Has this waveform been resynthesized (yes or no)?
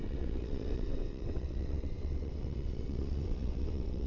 yes